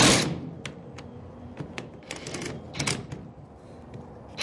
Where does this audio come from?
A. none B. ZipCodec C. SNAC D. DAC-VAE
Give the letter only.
A